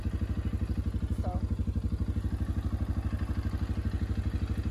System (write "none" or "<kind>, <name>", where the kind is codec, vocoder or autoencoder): none